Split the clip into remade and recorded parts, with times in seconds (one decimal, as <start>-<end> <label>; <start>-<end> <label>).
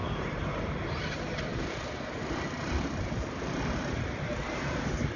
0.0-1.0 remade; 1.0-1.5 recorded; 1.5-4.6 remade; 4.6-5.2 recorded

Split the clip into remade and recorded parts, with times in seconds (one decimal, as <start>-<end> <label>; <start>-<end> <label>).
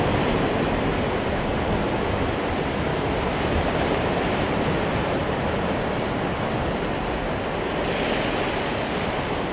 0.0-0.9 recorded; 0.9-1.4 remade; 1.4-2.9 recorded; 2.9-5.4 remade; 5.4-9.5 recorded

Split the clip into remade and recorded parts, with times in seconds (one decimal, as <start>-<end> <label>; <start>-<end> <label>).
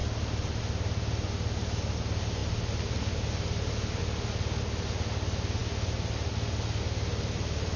0.0-7.8 recorded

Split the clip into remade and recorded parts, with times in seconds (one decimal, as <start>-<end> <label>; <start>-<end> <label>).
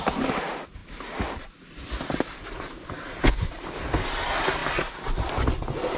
0.0-6.0 recorded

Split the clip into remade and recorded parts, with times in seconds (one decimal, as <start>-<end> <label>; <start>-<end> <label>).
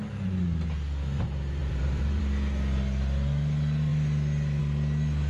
0.0-1.6 recorded; 1.6-2.2 remade; 2.2-5.3 recorded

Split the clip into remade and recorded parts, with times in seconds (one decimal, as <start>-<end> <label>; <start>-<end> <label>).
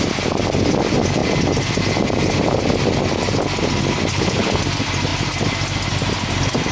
0.0-4.1 recorded; 4.1-4.6 remade; 4.6-6.7 recorded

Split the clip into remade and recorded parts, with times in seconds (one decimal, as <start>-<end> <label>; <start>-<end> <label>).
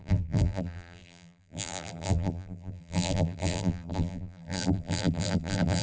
0.0-5.8 remade